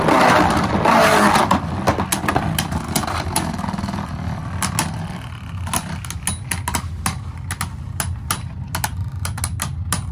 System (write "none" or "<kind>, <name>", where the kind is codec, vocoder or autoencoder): none